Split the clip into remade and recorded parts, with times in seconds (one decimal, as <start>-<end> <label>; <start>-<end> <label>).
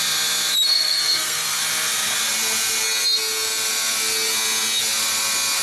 0.0-0.7 recorded; 0.7-1.6 remade; 1.6-5.6 recorded